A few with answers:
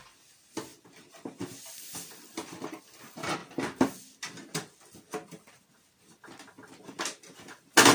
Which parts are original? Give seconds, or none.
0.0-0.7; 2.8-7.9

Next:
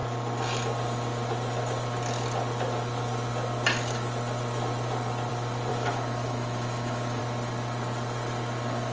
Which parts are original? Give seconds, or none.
0.0-5.7; 7.2-8.9

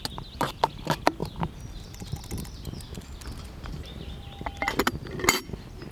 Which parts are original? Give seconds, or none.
0.0-5.9

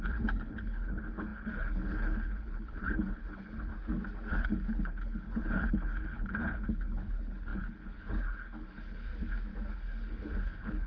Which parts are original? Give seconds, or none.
3.7-4.3; 9.1-9.7